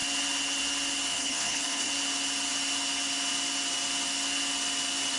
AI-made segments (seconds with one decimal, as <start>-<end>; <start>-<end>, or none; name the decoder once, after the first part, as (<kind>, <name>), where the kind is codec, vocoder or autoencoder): 1.1-1.9 (codec, HILCodec)